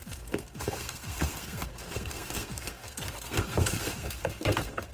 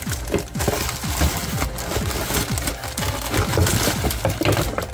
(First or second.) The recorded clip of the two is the second